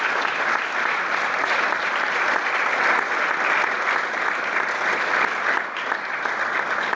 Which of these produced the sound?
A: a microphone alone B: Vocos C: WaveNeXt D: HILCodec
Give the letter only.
A